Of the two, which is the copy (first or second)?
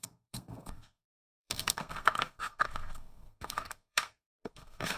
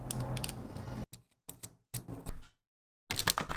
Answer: first